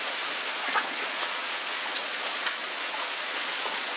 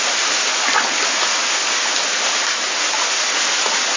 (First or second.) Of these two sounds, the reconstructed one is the first